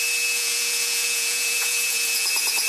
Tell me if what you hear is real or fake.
fake